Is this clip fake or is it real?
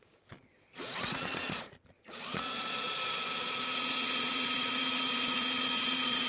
fake